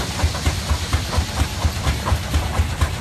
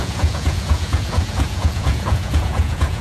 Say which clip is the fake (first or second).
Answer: second